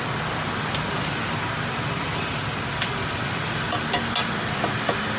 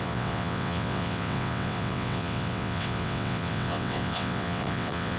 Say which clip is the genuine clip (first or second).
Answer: first